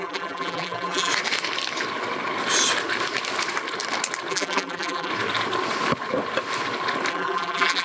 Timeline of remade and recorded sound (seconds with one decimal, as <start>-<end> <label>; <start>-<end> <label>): 0.0-1.1 remade; 1.1-4.3 recorded; 4.3-5.1 remade; 5.1-7.1 recorded; 7.1-7.8 remade